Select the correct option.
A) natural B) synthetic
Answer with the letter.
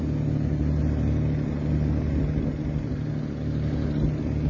A